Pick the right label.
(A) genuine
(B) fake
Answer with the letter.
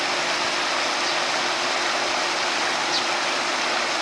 A